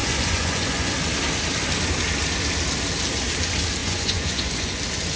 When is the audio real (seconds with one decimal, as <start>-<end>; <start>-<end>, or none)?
0.9-3.8; 4.8-5.2